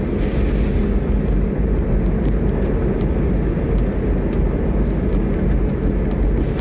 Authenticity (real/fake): real